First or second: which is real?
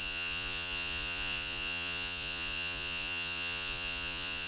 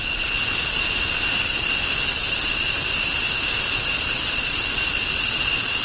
second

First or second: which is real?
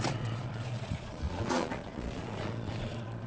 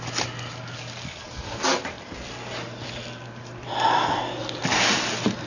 second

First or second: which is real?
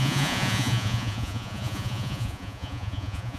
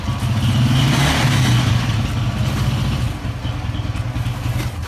second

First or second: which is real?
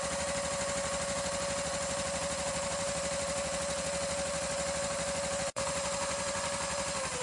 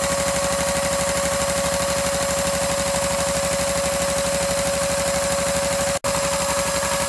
second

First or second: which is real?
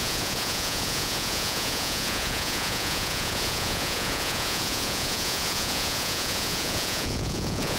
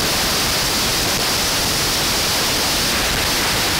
second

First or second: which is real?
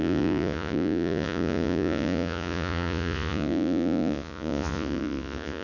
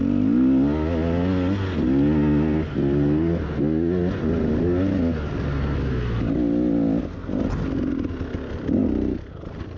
second